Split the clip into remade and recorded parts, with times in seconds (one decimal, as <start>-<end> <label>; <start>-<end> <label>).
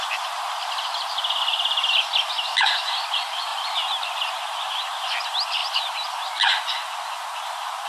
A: 0.0-3.5 remade; 3.5-4.4 recorded; 4.4-7.9 remade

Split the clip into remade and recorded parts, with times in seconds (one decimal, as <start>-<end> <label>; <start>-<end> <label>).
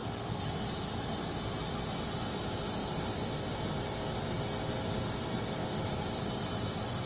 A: 0.0-1.3 remade; 1.3-2.8 recorded; 2.8-3.4 remade; 3.4-5.6 recorded; 5.6-7.1 remade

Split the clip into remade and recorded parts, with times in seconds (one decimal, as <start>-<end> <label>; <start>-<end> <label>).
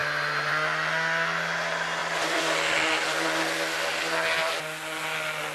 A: 0.0-0.5 remade; 0.5-2.0 recorded; 2.0-4.5 remade; 4.5-5.5 recorded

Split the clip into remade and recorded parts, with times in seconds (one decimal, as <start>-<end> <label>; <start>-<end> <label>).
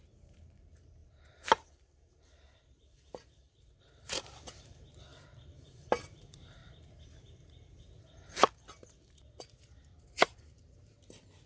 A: 0.0-5.1 remade; 5.1-5.6 recorded; 5.6-6.6 remade; 6.6-9.4 recorded; 9.4-11.5 remade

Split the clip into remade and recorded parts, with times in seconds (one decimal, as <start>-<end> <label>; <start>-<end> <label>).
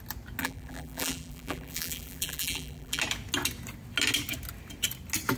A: 0.0-0.4 recorded; 0.4-3.0 remade; 3.0-5.4 recorded